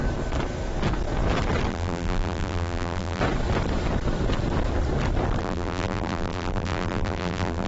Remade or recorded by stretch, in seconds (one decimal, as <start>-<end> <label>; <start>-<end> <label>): 0.0-1.7 recorded; 1.7-3.2 remade; 3.2-5.4 recorded; 5.4-7.7 remade